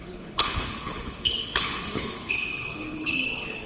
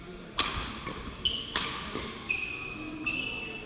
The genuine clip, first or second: second